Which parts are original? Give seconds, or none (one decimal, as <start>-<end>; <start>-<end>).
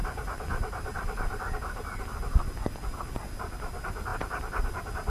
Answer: 0.0-5.1